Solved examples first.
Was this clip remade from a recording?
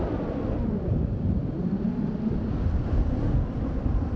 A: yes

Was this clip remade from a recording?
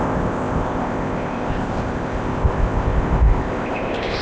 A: yes